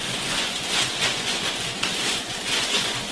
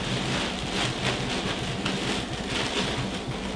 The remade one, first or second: first